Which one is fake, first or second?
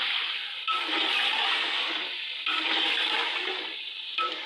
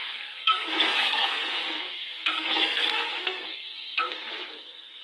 second